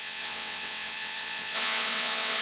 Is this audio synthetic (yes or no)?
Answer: yes